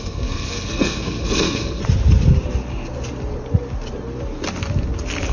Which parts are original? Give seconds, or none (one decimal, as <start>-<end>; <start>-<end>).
1.8-5.3